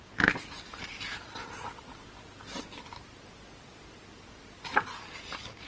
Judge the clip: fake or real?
real